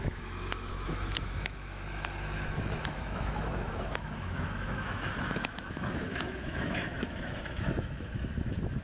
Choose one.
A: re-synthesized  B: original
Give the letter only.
A